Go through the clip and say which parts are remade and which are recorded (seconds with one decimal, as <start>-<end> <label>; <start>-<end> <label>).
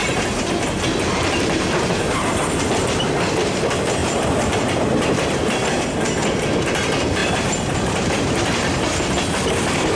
0.0-2.3 remade; 2.3-4.0 recorded; 4.0-5.4 remade; 5.4-7.2 recorded; 7.2-8.7 remade; 8.7-10.0 recorded